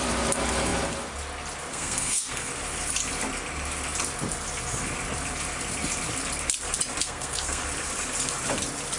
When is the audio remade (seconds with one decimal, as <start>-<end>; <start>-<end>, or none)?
1.7-2.5; 7.0-7.6